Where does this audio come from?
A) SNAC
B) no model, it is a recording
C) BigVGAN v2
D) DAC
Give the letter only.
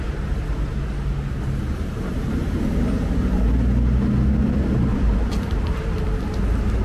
B